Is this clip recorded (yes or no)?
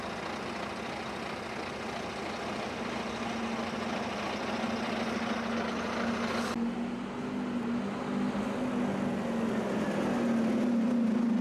yes